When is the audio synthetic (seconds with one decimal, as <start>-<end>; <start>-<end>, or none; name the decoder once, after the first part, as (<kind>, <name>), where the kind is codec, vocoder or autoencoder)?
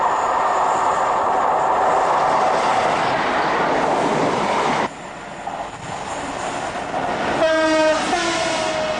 none